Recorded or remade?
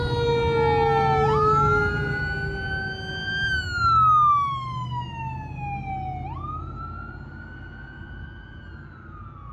recorded